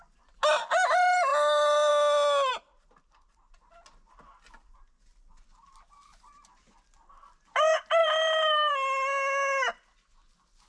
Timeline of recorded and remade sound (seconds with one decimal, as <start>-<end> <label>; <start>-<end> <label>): 0.0-1.3 recorded; 1.3-1.9 remade; 1.9-2.5 recorded; 2.5-3.7 remade; 3.7-8.0 recorded; 8.0-8.7 remade; 8.7-10.7 recorded